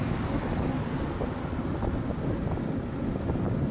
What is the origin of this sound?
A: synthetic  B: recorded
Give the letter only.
B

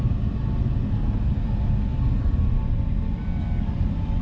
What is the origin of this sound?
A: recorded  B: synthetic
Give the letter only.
A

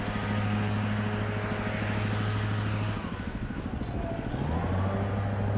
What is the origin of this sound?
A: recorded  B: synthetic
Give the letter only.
A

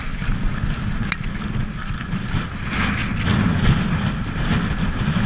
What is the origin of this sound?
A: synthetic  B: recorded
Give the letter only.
B